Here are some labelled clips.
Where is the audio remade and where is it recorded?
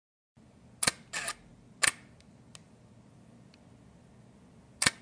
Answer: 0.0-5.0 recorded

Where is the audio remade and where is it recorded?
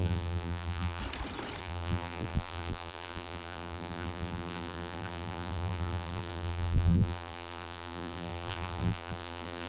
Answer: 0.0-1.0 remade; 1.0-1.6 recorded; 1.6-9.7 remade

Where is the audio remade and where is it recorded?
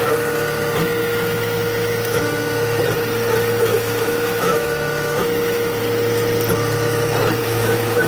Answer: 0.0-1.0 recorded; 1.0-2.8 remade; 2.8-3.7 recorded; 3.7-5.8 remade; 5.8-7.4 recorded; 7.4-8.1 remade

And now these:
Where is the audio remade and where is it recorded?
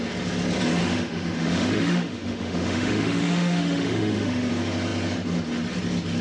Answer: 0.0-0.8 recorded; 0.8-4.5 remade; 4.5-6.2 recorded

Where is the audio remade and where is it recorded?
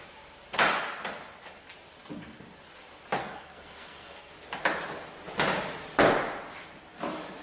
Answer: 0.0-3.2 recorded; 3.2-4.3 remade; 4.3-7.4 recorded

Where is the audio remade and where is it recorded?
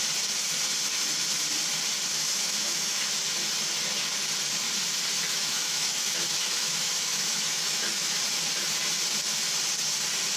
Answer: 0.0-2.2 recorded; 2.2-3.1 remade; 3.1-5.3 recorded; 5.3-8.2 remade; 8.2-10.4 recorded